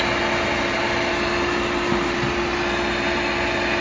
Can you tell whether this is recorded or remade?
recorded